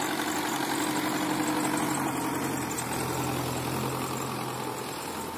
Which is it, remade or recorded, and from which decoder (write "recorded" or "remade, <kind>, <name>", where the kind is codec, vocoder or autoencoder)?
recorded